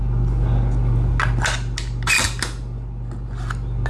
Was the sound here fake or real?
real